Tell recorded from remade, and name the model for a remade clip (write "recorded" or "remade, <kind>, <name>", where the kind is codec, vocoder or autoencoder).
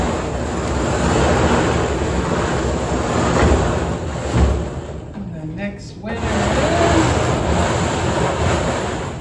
recorded